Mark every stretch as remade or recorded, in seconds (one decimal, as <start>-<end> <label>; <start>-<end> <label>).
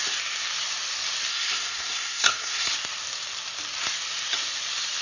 0.0-1.3 recorded; 1.3-2.7 remade; 2.7-5.0 recorded